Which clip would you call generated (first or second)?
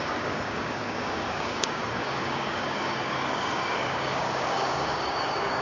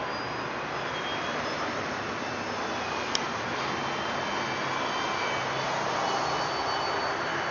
first